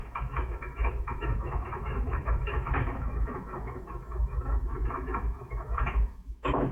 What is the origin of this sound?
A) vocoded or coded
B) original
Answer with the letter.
A